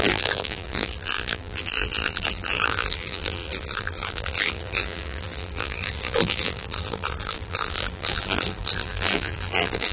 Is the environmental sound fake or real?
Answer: fake